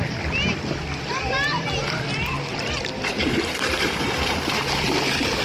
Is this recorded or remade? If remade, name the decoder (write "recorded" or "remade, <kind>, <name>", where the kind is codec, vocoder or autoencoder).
recorded